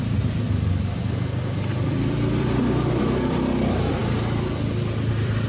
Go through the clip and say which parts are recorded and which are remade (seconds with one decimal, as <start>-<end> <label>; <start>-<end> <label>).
0.0-4.0 remade; 4.0-5.1 recorded; 5.1-5.5 remade